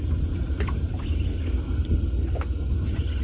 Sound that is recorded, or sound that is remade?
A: recorded